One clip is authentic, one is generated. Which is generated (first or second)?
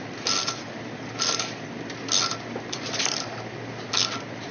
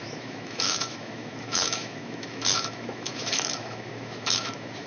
second